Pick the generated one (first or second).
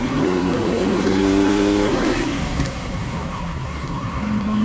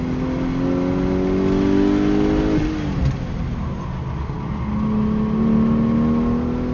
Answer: first